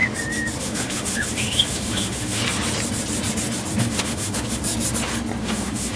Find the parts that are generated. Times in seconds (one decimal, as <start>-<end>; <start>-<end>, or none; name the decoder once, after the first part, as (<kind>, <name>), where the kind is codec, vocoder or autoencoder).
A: 0.6-2.4 (autoencoder, DAC-VAE); 3.8-4.6; 5.4-6.0